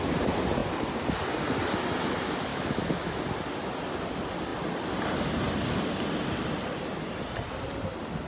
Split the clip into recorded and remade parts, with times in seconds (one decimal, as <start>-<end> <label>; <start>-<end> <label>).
0.0-2.5 recorded; 2.5-3.2 remade; 3.2-8.3 recorded

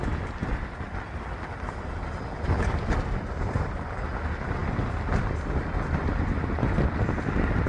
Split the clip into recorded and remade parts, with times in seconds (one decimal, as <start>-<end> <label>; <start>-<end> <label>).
0.0-7.7 recorded

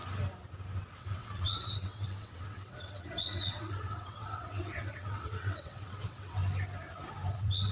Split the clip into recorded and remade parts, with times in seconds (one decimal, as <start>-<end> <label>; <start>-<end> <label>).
0.0-1.0 recorded; 1.0-6.4 remade; 6.4-7.3 recorded; 7.3-7.7 remade

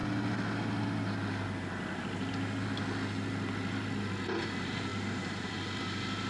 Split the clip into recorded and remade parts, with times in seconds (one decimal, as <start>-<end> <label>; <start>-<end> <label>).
0.0-4.9 recorded; 4.9-5.5 remade; 5.5-6.3 recorded

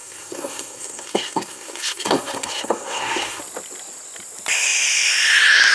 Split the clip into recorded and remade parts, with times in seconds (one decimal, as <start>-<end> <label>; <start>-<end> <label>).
0.0-3.4 remade; 3.4-5.7 recorded

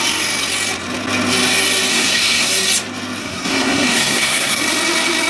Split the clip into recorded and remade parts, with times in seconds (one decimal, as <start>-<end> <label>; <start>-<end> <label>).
0.0-1.9 recorded; 1.9-2.5 remade; 2.5-3.2 recorded; 3.2-4.6 remade; 4.6-5.3 recorded

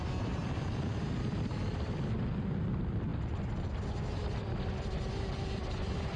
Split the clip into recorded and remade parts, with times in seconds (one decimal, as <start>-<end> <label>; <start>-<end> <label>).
0.0-6.2 recorded